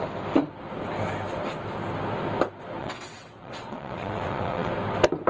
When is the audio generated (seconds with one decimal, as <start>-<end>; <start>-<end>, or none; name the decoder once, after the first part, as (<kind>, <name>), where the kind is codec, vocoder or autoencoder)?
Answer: 2.8-4.7 (vocoder, WaveNeXt)